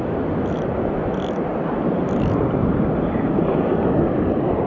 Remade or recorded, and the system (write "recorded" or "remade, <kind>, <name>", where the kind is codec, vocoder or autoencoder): recorded